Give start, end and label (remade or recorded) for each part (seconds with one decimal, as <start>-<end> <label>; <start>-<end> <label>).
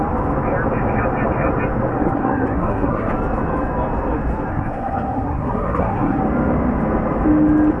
0.0-1.9 recorded; 1.9-3.1 remade; 3.1-4.5 recorded; 4.5-6.2 remade; 6.2-7.8 recorded